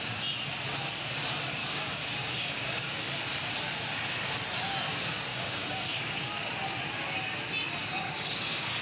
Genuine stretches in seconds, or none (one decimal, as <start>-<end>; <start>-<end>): 0.0-1.6; 3.1-5.3; 6.3-7.8